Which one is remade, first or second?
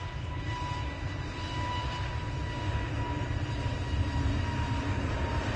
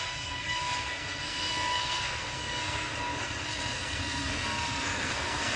second